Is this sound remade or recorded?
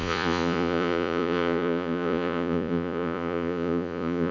remade